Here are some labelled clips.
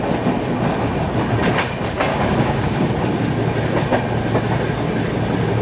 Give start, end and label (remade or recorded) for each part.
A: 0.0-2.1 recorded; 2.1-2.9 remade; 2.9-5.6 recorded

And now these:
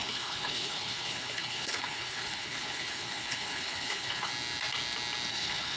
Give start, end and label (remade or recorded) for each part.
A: 0.0-4.3 remade; 4.3-5.3 recorded; 5.3-5.8 remade

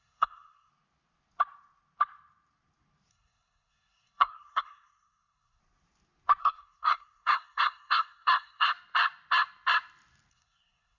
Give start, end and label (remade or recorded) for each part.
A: 0.0-0.7 remade; 0.7-3.1 recorded; 3.1-5.6 remade; 5.6-6.4 recorded; 6.4-8.7 remade; 8.7-10.3 recorded; 10.3-11.0 remade

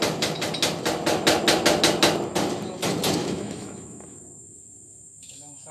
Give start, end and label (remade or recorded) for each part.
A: 0.0-3.2 recorded; 3.2-5.7 remade

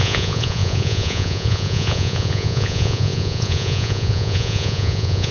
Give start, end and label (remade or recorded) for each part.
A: 0.0-5.3 remade

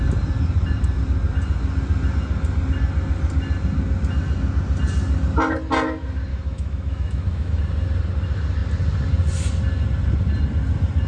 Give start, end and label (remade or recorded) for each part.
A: 0.0-6.3 recorded; 6.3-7.6 remade; 7.6-11.1 recorded